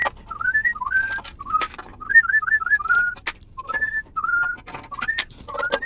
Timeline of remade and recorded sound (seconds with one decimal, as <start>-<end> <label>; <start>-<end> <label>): 0.0-5.9 recorded